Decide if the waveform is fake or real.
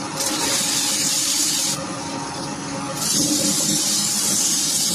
real